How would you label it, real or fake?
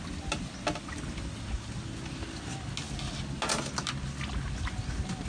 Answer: real